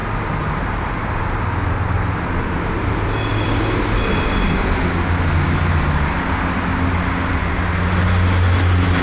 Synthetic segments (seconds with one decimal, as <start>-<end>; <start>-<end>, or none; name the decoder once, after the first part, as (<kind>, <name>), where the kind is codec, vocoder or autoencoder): none